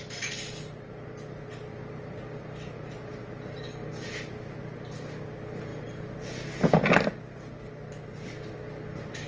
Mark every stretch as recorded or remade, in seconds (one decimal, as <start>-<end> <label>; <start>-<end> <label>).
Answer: 0.0-5.7 recorded; 5.7-6.8 remade; 6.8-9.3 recorded